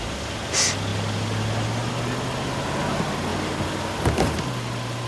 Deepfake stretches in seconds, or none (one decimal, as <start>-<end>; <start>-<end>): none